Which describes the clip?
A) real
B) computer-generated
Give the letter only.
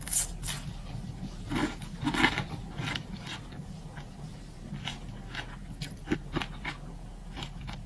A